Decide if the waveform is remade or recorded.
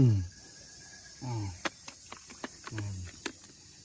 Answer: recorded